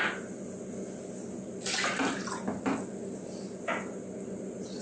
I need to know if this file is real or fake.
real